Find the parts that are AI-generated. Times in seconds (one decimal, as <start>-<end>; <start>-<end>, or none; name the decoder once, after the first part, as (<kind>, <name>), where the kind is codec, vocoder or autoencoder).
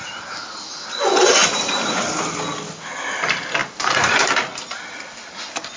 3.6-4.3 (vocoder, BigVGAN v2)